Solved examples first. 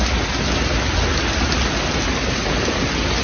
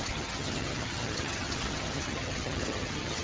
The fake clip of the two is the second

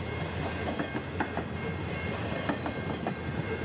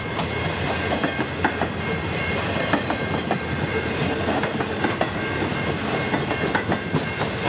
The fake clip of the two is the second